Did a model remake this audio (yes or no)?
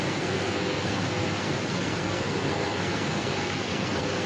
yes